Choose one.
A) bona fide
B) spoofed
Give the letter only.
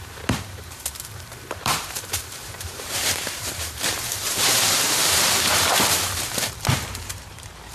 B